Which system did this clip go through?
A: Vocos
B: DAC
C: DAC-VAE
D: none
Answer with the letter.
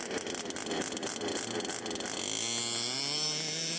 D